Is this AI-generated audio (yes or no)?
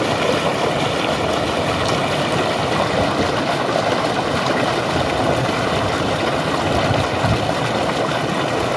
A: no